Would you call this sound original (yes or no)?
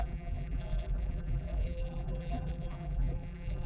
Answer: no